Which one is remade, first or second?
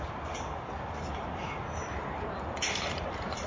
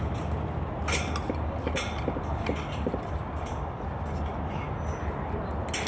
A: first